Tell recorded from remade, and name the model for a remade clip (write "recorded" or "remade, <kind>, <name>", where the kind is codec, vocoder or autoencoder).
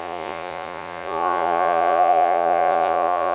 remade, vocoder, Vocos